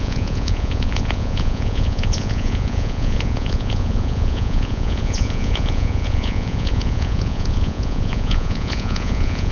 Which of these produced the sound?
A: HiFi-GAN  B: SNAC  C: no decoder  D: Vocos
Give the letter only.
D